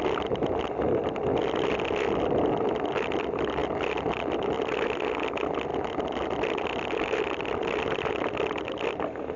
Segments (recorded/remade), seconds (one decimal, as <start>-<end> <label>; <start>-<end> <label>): 0.0-9.4 recorded